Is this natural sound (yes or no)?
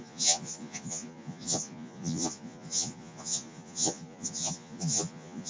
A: no